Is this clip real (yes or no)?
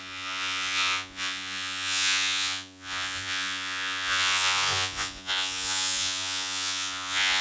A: no